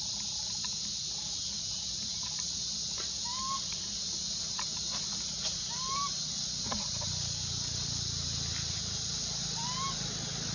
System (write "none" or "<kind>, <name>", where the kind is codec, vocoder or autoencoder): none